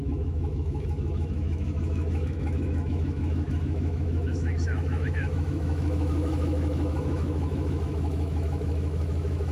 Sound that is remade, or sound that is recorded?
remade